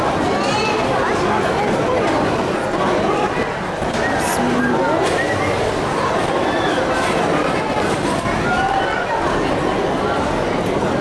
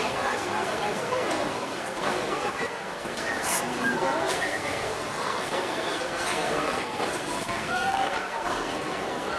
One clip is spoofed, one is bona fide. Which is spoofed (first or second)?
second